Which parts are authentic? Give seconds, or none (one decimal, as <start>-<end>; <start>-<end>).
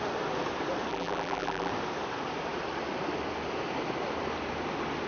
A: 0.0-0.9; 1.7-5.1